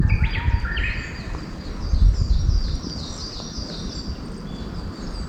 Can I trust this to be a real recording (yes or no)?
yes